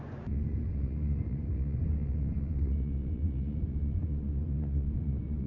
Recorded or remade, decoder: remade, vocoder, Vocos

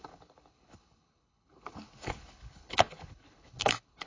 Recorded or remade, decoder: remade, codec, HILCodec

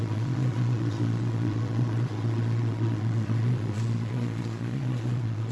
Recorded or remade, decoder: remade, vocoder, Vocos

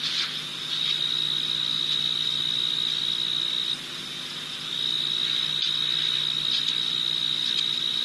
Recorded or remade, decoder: recorded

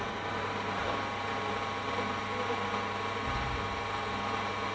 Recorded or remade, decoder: recorded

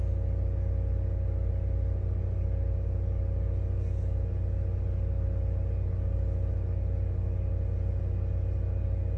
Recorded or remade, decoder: recorded